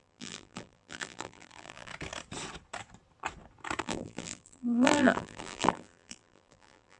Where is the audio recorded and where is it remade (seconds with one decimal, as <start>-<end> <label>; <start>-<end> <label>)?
0.0-1.9 remade; 1.9-3.8 recorded; 3.8-7.0 remade